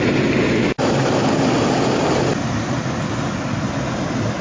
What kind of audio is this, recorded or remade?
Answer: recorded